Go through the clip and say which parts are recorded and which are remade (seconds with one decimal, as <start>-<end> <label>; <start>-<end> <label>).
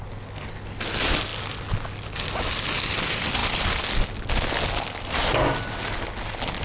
0.0-6.6 recorded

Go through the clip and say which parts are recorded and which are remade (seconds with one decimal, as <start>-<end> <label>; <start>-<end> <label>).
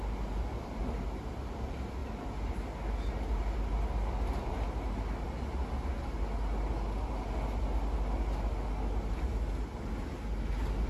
0.0-10.9 recorded